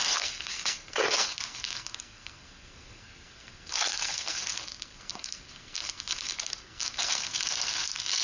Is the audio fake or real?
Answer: fake